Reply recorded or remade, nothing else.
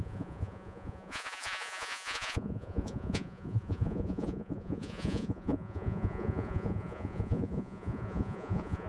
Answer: remade